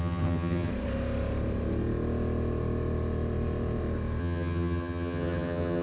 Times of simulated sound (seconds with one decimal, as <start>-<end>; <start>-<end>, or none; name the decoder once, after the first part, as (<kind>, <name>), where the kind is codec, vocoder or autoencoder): 0.0-0.7 (vocoder, HiFi-GAN); 4.2-5.8